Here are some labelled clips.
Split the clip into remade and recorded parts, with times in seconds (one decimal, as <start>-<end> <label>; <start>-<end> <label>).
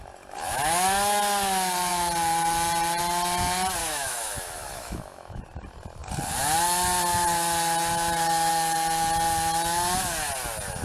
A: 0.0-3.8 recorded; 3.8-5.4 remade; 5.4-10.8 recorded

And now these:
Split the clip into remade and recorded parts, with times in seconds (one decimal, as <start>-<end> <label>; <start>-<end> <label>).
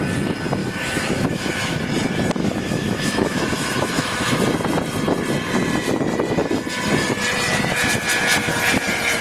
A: 0.0-0.6 recorded; 0.6-1.8 remade; 1.8-2.4 recorded; 2.4-4.4 remade; 4.4-9.2 recorded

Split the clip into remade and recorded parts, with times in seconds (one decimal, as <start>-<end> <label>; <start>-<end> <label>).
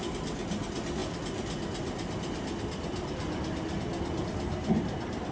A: 0.0-5.3 recorded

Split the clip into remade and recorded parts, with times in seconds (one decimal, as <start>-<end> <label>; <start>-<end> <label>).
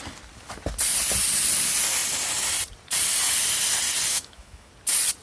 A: 0.0-4.1 recorded; 4.1-4.7 remade; 4.7-5.2 recorded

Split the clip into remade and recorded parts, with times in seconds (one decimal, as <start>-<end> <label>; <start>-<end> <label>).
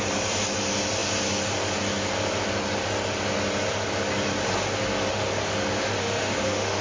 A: 0.0-6.0 recorded; 6.0-6.8 remade